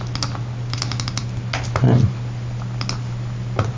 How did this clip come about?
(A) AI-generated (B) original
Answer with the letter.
B